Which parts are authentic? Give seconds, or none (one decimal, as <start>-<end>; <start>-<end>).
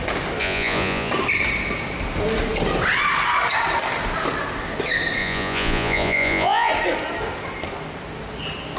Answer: 0.0-0.4; 1.1-5.2; 6.7-8.8